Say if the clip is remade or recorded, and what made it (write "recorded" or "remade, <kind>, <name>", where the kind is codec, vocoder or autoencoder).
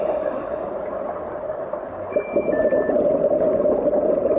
recorded